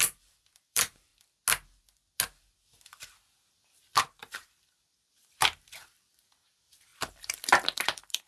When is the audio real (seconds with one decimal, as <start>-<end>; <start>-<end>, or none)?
1.1-3.5